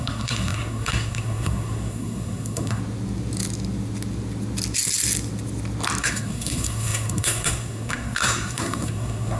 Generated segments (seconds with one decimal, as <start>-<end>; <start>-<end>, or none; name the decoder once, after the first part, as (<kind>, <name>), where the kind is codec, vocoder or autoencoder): 0.0-2.8 (codec, SNAC); 6.0-9.4